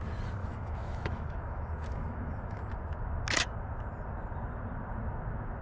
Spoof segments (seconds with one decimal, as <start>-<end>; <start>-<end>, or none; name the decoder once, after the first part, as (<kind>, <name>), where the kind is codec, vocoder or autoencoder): 0.4-2.7 (autoencoder, DAC-VAE)

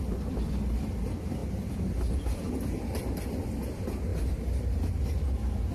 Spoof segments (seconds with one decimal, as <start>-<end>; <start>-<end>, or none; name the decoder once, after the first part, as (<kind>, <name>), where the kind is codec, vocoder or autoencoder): 4.1-5.0 (vocoder, BigVGAN v2)